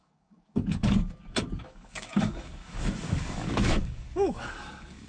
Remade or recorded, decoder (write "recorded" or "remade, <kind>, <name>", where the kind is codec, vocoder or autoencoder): remade, codec, DAC